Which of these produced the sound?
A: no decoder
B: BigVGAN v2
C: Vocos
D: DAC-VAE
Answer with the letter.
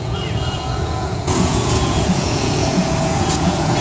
C